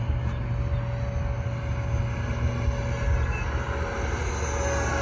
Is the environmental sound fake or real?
real